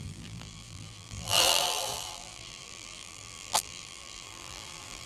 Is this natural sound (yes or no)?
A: no